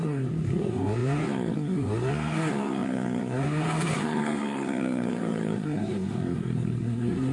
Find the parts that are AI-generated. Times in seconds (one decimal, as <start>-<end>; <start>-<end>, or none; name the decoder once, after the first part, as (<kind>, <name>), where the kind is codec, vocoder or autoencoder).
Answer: 0.0-7.3 (codec, SNAC)